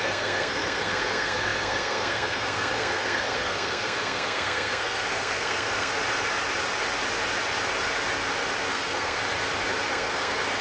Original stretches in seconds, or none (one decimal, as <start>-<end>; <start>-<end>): 5.9-8.7; 9.2-9.9